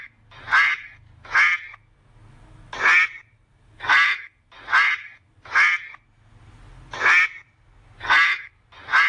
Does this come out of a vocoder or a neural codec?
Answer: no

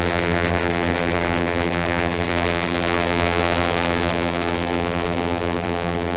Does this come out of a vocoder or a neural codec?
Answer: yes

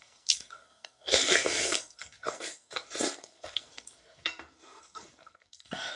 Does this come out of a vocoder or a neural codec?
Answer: yes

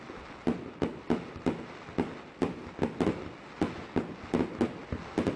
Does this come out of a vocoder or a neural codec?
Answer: no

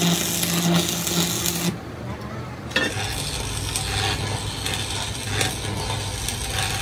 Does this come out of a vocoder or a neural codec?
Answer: no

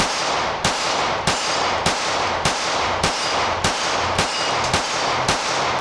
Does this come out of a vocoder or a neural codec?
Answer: no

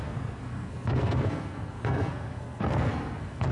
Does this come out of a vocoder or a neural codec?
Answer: yes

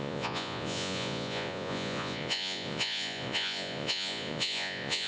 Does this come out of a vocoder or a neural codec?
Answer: yes